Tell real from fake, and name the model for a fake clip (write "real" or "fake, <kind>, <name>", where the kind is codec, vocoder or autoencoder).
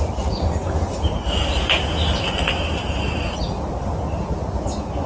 real